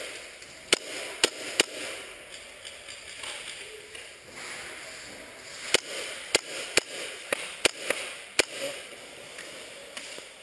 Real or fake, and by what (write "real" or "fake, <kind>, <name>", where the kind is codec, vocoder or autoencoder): real